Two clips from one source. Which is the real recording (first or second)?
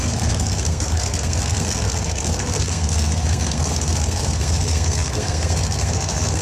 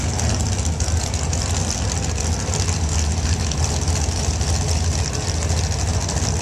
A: second